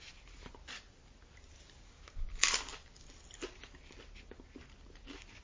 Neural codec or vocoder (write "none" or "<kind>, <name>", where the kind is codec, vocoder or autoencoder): none